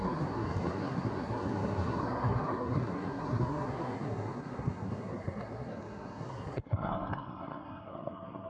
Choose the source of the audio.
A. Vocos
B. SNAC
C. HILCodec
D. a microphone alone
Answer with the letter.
B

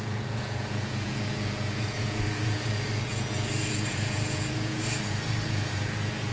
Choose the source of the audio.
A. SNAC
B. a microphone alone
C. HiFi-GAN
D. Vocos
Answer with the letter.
D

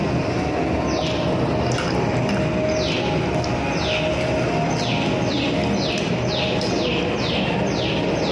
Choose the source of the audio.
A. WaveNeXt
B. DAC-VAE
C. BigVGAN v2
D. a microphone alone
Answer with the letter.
D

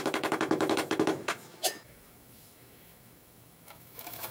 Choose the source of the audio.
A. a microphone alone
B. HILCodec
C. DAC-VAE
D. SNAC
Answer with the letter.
C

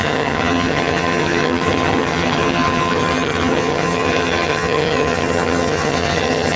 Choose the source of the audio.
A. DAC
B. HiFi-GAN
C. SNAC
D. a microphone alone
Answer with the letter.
B